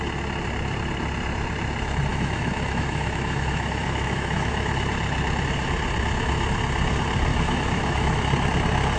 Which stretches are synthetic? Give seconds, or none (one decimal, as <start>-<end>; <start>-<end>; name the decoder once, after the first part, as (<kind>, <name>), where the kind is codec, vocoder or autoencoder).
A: 2.1-4.7 (autoencoder, DAC-VAE); 7.3-8.2